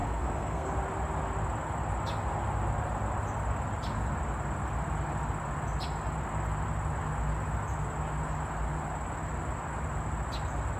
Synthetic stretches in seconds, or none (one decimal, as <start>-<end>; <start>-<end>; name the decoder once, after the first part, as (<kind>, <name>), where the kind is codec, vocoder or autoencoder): 0.0-0.7 (codec, SNAC)